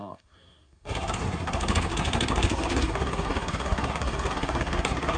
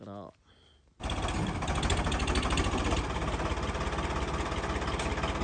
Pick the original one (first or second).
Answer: second